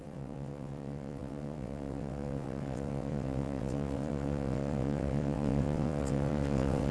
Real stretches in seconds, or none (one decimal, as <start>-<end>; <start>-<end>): none